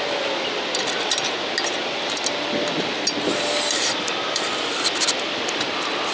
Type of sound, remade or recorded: recorded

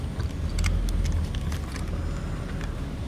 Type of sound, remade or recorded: recorded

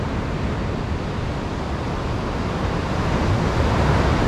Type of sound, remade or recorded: recorded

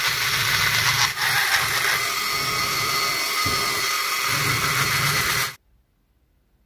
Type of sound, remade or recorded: recorded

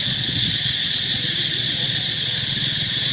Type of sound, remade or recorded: remade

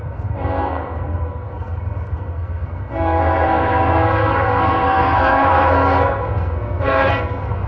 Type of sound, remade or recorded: remade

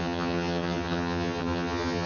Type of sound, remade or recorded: remade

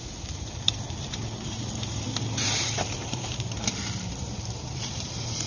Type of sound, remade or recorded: remade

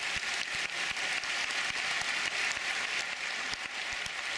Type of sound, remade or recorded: recorded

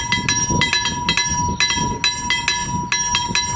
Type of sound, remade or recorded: recorded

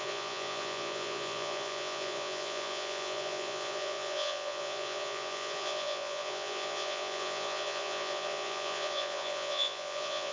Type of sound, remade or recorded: remade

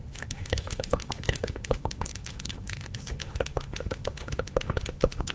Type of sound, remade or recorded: remade